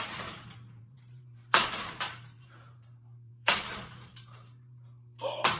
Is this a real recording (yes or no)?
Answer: no